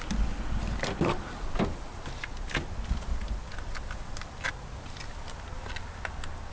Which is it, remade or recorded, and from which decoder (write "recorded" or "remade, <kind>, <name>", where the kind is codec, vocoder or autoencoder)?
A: recorded